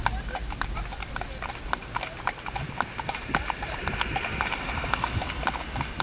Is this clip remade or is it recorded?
recorded